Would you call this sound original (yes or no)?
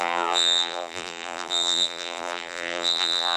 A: no